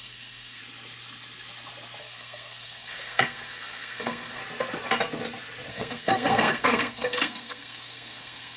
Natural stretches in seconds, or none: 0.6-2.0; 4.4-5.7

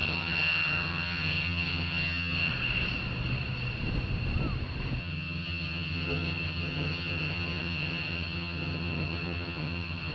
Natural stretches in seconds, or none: 2.5-5.0

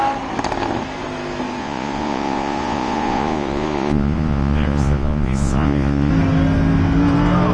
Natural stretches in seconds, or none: 0.0-1.6; 6.1-7.5

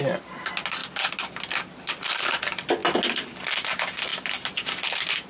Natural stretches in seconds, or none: 0.0-5.3

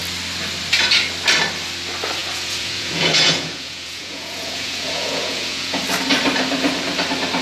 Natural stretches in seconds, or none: 0.0-2.2; 5.8-7.4

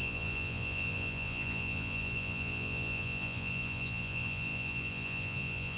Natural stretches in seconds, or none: none